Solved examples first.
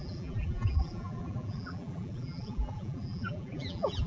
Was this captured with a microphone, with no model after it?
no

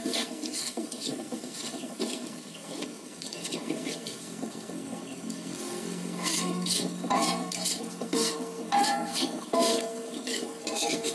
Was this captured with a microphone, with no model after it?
no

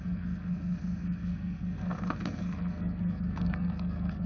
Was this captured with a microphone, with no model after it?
no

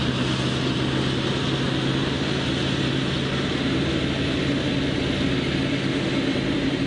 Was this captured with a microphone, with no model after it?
yes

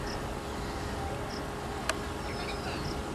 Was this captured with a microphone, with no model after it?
yes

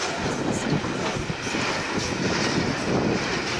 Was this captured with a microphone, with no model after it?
yes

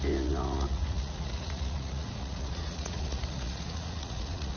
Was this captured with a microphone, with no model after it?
no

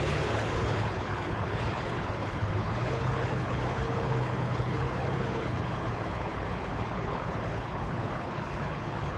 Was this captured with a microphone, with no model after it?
no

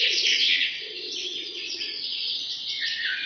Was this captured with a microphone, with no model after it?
no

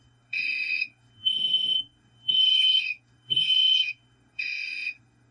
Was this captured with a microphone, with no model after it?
no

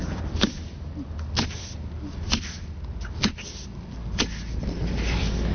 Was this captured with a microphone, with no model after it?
yes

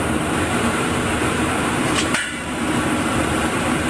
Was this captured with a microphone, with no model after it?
no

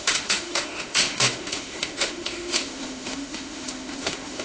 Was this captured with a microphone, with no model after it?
no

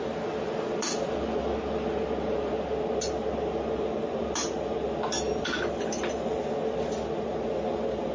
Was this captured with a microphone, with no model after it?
yes